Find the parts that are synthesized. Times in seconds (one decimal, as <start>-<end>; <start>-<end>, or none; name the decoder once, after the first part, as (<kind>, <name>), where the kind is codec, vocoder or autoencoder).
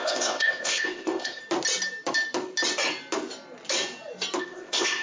0.0-1.4 (codec, ZipCodec); 4.4-5.0